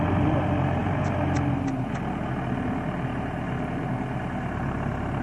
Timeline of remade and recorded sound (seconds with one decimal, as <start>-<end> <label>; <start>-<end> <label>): 0.0-5.2 recorded